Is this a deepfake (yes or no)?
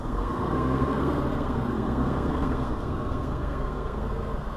yes